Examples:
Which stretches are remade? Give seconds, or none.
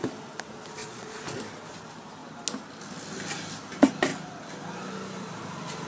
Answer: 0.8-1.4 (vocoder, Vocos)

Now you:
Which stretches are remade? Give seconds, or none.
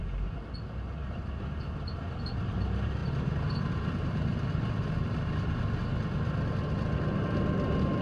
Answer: 3.0-5.6 (vocoder, BigVGAN v2)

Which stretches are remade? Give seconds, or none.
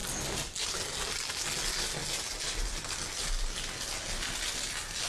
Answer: none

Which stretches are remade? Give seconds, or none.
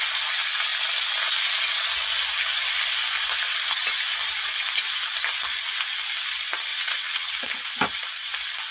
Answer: 6.7-7.3 (vocoder, WaveNeXt)